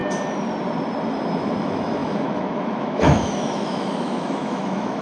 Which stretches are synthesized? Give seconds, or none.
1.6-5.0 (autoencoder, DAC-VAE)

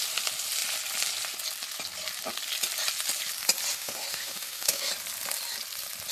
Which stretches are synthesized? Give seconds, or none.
3.7-4.9 (autoencoder, DAC-VAE)

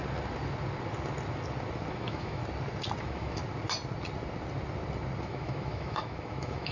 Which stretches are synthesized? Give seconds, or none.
1.9-2.4 (autoencoder, DAC-VAE); 3.0-3.4; 5.2-6.7

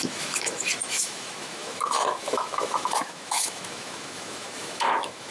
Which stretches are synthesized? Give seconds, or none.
0.0-5.3 (autoencoder, DAC-VAE)

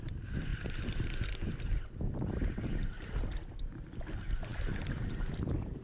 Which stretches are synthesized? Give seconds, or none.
none

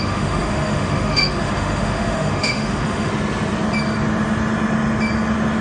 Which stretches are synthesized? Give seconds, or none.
0.0-3.1 (autoencoder, DAC-VAE)

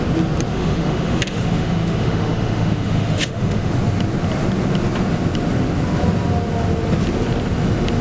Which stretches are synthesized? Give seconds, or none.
0.5-3.7 (autoencoder, DAC-VAE)

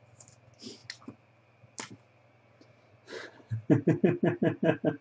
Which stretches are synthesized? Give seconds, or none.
none